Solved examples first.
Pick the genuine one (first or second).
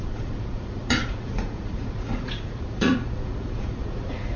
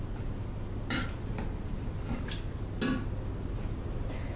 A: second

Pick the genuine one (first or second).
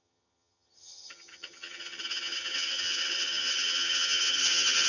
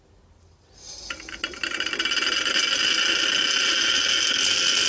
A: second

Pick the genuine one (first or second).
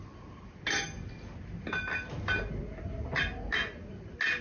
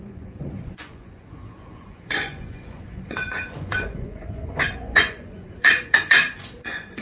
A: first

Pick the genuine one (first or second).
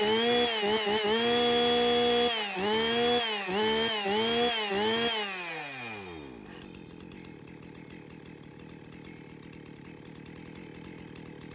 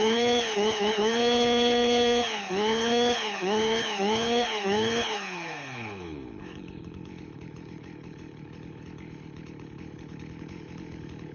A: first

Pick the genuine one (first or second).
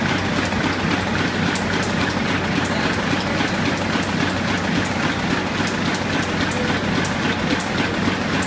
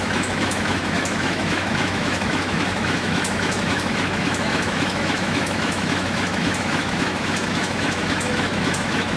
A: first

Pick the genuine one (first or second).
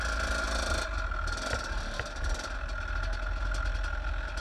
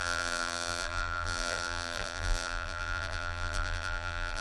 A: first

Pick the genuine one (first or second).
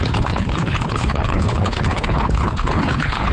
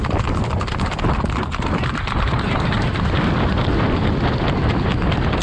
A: second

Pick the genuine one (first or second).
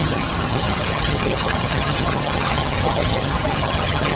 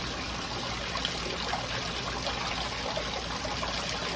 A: second